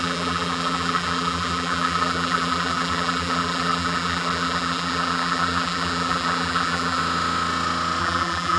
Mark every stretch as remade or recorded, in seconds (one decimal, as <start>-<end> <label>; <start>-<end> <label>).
0.0-7.0 remade; 7.0-8.0 recorded; 8.0-8.6 remade